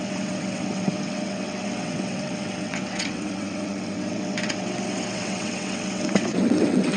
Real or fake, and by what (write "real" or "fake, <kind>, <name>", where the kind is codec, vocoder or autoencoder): fake, vocoder, WaveNeXt